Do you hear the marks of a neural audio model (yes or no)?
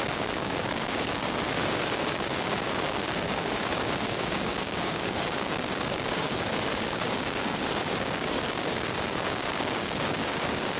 yes